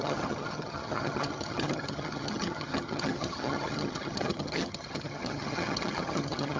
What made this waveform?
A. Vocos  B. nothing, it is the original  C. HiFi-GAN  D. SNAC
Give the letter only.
C